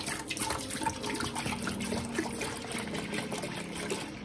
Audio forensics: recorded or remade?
recorded